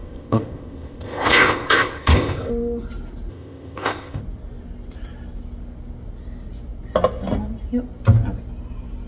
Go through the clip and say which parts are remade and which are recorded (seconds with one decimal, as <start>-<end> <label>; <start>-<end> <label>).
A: 0.0-2.5 remade; 2.5-3.3 recorded; 3.3-4.2 remade; 4.2-9.1 recorded